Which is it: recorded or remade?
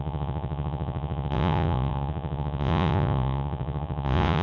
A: remade